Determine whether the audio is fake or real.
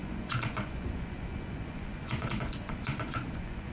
fake